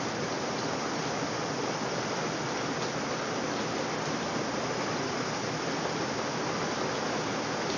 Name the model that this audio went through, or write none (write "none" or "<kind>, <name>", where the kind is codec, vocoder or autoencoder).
none